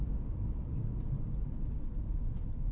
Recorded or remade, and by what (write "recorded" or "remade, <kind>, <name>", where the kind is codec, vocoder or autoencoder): remade, vocoder, BigVGAN v2